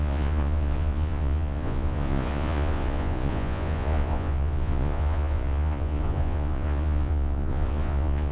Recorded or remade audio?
remade